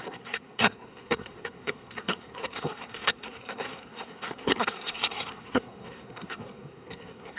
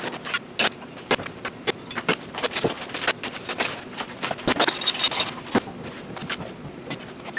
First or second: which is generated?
first